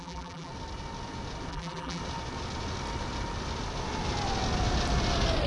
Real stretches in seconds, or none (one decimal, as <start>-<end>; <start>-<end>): 0.5-1.5; 2.0-5.5